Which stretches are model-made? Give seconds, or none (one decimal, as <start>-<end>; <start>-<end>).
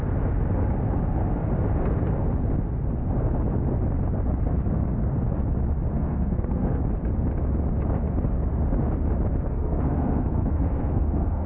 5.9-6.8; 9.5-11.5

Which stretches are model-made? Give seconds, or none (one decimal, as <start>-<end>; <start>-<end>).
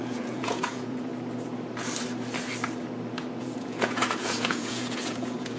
0.0-1.1; 3.4-5.6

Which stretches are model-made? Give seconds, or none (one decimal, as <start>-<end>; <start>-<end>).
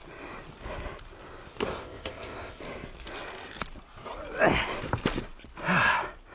1.7-2.6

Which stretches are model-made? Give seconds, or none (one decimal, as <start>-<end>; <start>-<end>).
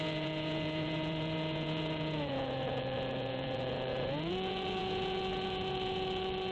0.0-6.5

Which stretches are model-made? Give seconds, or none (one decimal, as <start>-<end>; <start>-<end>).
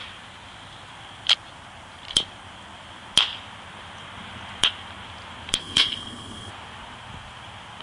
5.6-6.5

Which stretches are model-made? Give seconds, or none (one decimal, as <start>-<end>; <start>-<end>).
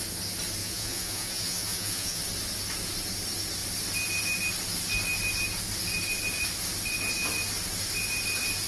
0.6-2.2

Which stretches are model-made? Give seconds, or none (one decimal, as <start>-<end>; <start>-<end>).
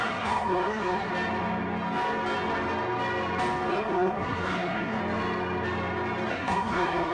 0.0-1.1; 3.7-5.0; 6.3-7.1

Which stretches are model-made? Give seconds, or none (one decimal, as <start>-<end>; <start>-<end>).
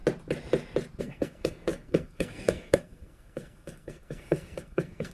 1.0-5.1